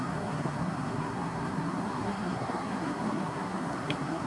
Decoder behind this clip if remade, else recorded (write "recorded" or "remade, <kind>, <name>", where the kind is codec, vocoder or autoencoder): remade, codec, SNAC